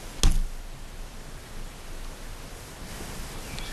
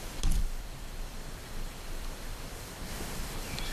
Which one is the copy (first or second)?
second